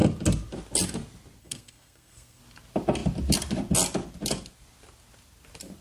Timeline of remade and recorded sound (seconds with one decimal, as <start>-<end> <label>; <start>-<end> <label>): 0.0-1.4 recorded; 1.4-2.4 remade; 2.4-5.8 recorded